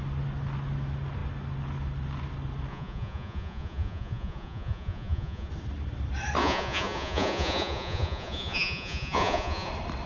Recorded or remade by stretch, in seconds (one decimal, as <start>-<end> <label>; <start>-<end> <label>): 0.0-2.7 recorded; 2.7-5.5 remade; 5.5-6.4 recorded; 6.4-9.7 remade; 9.7-10.1 recorded